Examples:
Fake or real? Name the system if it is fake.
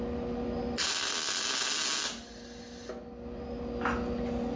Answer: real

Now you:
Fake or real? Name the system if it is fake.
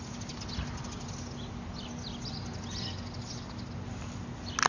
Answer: real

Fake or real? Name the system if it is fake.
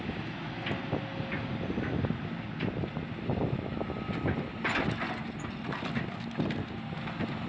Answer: real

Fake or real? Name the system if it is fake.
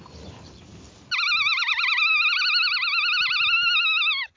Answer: real